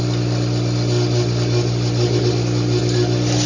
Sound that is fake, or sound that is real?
real